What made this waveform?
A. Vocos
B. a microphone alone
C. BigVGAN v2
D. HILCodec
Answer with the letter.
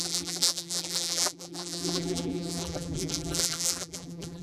C